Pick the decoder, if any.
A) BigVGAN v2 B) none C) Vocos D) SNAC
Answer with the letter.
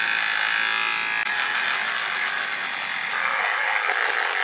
B